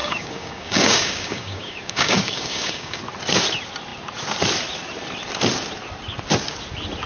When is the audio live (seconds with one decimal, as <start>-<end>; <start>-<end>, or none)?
3.0-7.1